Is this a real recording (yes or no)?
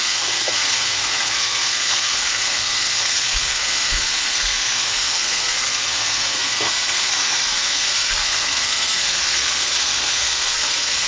no